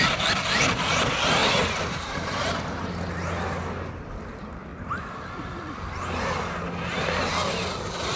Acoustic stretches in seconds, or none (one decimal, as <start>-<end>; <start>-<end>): 0.0-1.4; 2.9-8.2